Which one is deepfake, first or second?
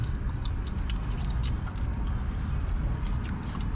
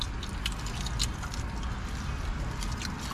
first